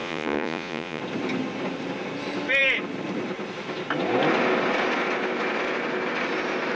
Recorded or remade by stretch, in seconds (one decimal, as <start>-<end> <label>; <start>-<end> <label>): 0.0-1.0 remade; 1.0-6.7 recorded